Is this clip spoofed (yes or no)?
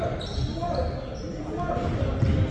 no